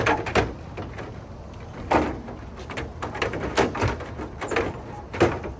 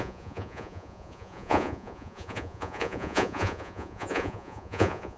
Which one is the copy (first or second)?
second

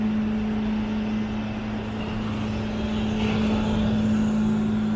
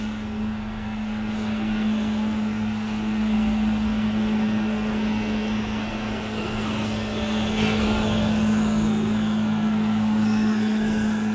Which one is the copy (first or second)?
second